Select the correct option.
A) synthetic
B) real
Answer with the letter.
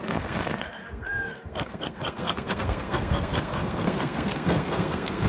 A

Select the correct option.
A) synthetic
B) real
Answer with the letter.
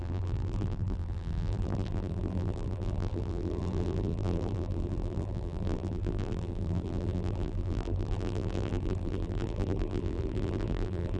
A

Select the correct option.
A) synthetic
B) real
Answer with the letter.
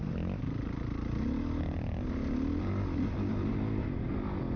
B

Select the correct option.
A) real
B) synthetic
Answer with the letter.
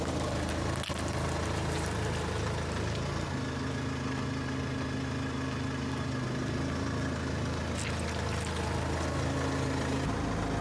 A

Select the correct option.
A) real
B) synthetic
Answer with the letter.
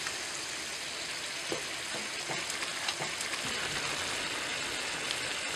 A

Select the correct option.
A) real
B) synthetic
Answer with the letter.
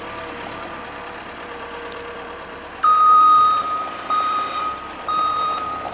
B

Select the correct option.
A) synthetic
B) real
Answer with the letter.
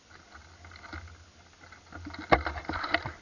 B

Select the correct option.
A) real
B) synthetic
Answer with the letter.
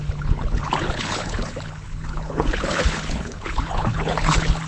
B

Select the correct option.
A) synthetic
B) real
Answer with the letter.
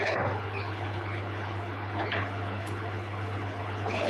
A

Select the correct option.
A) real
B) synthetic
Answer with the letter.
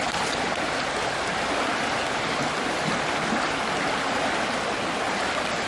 A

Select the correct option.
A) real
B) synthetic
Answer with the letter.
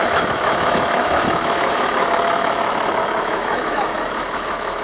B